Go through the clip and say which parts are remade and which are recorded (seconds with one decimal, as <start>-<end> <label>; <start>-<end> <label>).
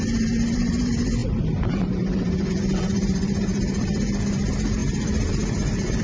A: 0.0-6.0 remade